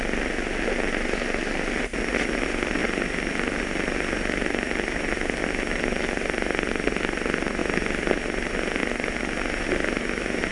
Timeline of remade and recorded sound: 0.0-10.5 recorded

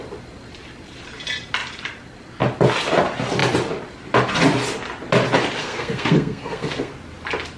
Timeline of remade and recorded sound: 0.0-5.6 recorded; 5.6-6.9 remade; 6.9-7.6 recorded

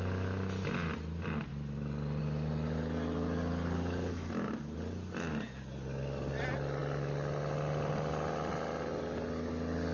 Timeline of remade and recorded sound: 0.0-9.9 recorded

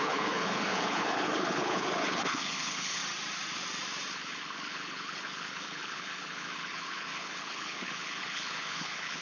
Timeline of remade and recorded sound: 0.0-3.0 remade; 3.0-4.1 recorded; 4.1-9.2 remade

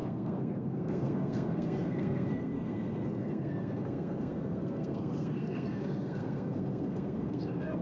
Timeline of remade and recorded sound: 0.0-7.8 remade

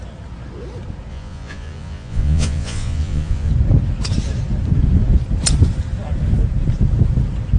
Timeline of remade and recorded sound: 0.0-1.1 recorded; 1.1-3.5 remade; 3.5-7.6 recorded

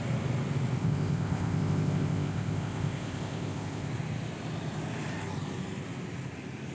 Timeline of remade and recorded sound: 0.0-0.8 recorded; 0.8-3.9 remade; 3.9-6.7 recorded

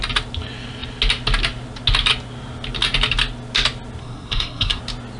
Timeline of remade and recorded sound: 0.0-4.0 recorded; 4.0-4.8 remade; 4.8-5.2 recorded